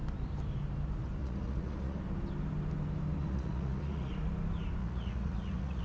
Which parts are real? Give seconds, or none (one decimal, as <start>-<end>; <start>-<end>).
0.0-1.2; 2.0-3.2; 4.1-4.8